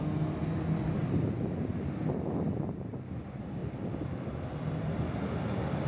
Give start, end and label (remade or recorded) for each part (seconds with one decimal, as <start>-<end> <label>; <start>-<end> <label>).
0.0-1.0 recorded; 1.0-2.9 remade; 2.9-3.6 recorded; 3.6-5.9 remade